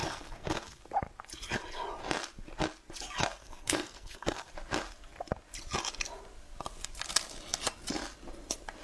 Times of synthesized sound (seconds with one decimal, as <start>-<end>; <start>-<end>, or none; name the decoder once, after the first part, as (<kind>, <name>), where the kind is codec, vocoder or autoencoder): 0.0-0.8 (codec, SNAC); 3.4-4.5